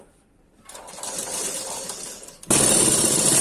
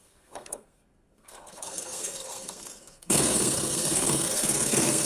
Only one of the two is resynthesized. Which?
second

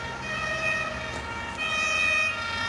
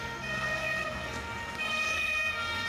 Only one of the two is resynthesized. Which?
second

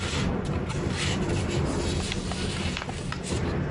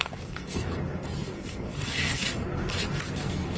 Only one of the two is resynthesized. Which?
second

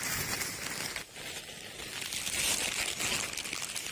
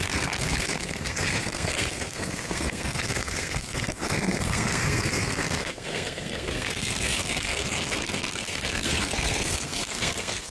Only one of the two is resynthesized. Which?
second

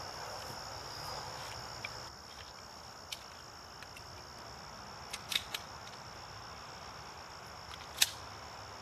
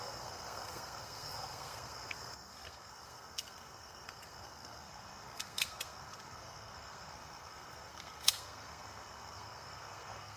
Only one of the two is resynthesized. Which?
second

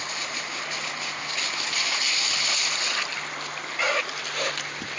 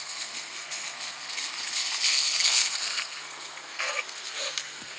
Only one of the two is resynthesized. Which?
second